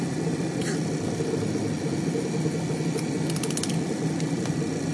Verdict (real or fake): real